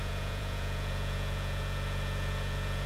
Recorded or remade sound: remade